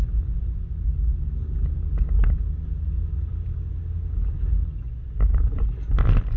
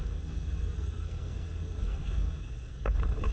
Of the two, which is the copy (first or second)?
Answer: second